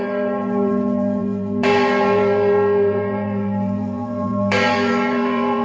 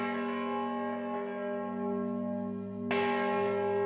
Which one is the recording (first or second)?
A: second